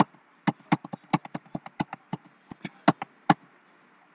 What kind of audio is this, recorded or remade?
recorded